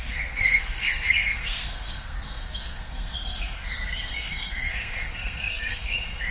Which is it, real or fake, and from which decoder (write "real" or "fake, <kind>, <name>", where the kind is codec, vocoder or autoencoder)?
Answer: fake, codec, SNAC